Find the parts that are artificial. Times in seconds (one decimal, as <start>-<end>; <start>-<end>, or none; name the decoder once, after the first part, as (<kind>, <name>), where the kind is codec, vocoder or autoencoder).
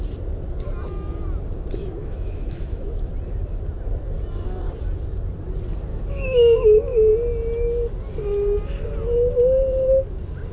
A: 1.8-3.1 (autoencoder, DAC-VAE); 5.9-7.1